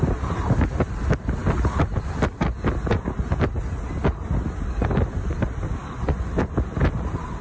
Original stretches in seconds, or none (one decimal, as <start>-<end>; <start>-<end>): 0.0-7.4

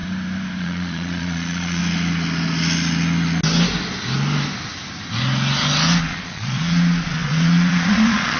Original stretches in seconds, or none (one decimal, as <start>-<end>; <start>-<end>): 0.0-0.6; 1.8-6.0

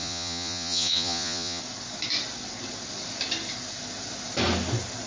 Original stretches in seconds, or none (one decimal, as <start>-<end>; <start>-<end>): 1.6-5.1

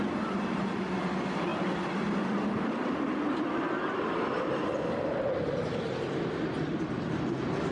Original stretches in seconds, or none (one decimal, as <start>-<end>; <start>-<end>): 0.0-7.7

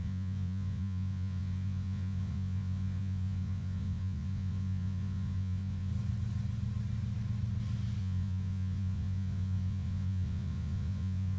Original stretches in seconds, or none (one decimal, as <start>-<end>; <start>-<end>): 5.9-8.0

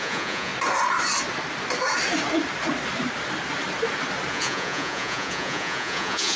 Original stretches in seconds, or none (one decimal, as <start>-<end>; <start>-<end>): 0.5-4.3